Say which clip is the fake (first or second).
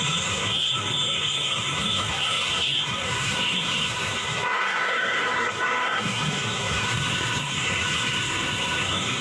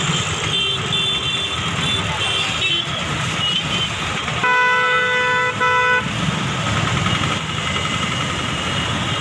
first